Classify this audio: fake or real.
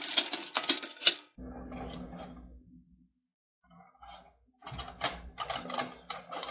real